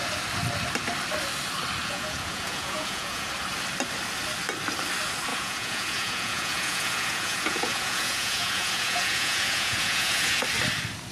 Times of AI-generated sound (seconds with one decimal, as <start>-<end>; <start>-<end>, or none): 1.8-3.3; 5.3-10.4